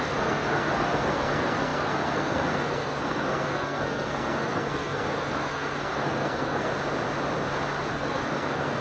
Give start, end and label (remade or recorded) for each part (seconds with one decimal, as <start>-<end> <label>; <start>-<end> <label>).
0.0-6.7 remade; 6.7-7.9 recorded; 7.9-8.8 remade